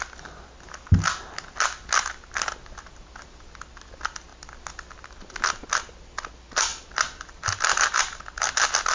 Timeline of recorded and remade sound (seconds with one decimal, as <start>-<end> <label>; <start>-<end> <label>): 0.0-8.9 recorded